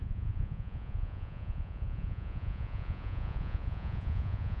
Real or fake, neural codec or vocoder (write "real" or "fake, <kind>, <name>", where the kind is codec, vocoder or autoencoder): fake, vocoder, Vocos